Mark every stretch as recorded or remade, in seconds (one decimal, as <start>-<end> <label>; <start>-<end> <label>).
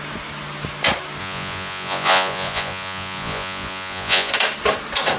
0.0-1.2 recorded; 1.2-4.3 remade; 4.3-5.2 recorded